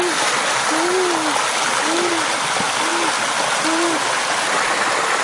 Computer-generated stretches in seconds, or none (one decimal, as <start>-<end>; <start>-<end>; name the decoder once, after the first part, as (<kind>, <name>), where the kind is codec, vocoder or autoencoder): none